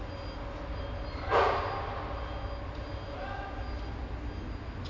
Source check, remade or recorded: recorded